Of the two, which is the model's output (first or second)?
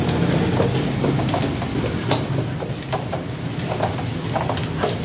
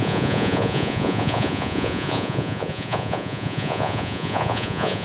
second